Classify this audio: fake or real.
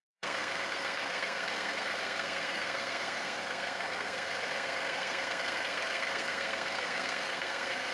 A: fake